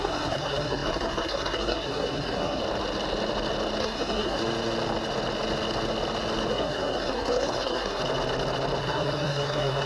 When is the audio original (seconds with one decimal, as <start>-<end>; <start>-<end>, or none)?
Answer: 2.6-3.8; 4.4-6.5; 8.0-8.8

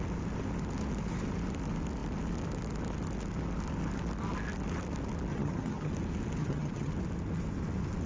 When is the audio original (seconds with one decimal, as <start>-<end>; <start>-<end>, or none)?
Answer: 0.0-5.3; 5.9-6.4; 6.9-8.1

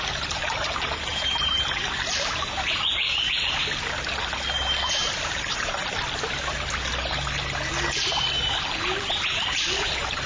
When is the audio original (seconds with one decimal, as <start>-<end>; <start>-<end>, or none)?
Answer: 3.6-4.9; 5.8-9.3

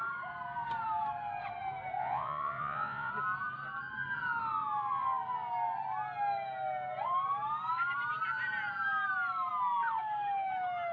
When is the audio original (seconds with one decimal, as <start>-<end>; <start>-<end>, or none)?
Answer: 0.0-2.0; 3.1-10.9